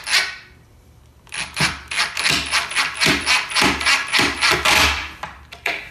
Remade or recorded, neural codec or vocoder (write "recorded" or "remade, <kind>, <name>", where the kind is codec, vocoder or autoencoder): remade, vocoder, BigVGAN v2